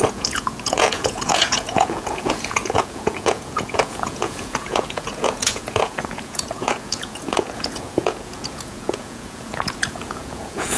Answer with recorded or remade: remade